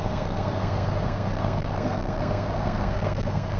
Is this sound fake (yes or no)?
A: yes